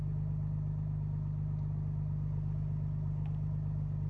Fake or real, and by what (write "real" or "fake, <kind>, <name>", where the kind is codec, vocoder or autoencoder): real